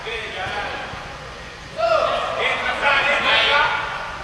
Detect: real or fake fake